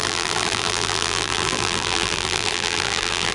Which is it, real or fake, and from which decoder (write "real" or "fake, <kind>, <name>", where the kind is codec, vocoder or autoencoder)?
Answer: fake, vocoder, BigVGAN v2